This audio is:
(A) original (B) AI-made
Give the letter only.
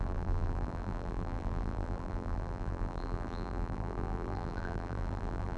B